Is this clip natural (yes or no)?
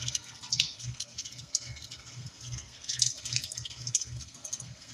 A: no